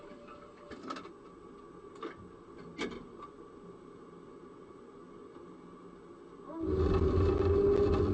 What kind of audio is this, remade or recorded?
recorded